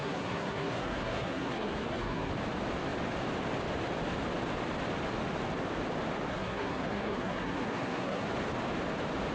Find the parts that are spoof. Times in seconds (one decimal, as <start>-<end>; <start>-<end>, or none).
0.0-2.3; 6.3-8.3